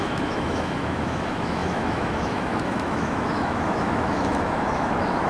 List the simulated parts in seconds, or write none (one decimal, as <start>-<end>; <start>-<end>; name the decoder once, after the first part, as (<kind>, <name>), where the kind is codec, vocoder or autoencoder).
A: 0.0-5.3 (autoencoder, DAC-VAE)